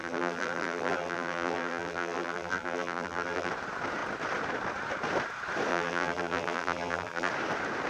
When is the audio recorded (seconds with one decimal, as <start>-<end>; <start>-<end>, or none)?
3.5-5.7; 7.3-7.9